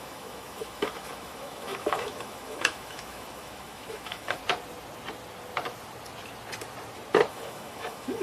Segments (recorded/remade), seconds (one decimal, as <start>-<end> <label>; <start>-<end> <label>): 0.0-4.4 remade; 4.4-7.3 recorded; 7.3-8.2 remade